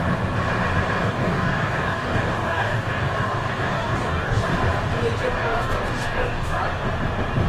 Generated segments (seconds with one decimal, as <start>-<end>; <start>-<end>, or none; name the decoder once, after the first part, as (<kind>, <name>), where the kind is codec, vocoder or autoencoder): 1.0-4.5 (codec, DAC); 5.4-6.6